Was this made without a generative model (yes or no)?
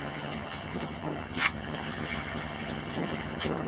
no